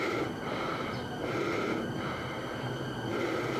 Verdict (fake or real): real